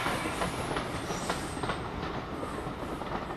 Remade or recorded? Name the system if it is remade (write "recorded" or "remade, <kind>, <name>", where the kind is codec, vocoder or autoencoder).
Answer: recorded